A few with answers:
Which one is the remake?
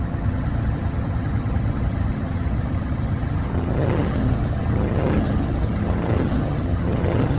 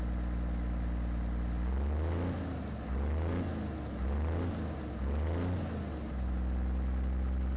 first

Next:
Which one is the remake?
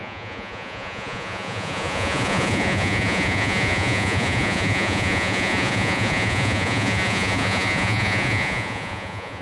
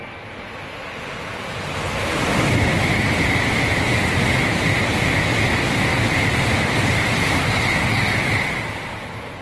first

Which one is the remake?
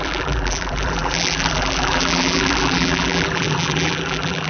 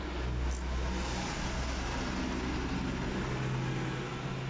first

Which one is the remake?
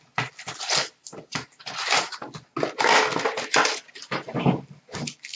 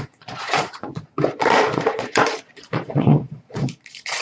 second